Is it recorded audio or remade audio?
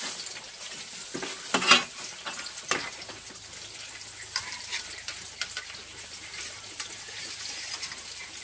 recorded